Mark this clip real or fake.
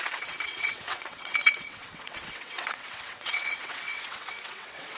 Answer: fake